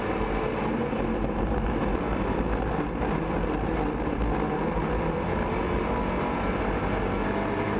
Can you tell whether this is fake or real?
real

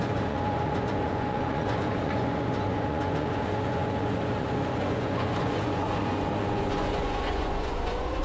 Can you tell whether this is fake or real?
fake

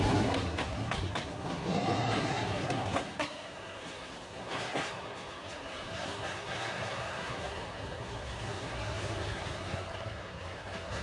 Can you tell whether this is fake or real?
fake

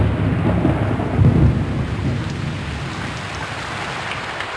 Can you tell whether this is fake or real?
real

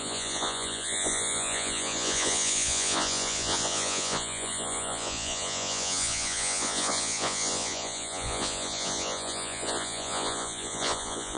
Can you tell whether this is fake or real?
fake